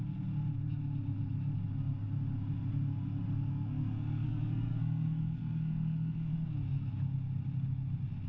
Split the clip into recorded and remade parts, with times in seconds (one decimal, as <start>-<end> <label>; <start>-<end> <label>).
0.0-3.5 recorded; 3.5-6.3 remade; 6.3-8.3 recorded